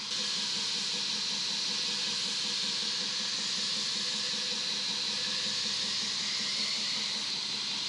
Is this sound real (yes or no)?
yes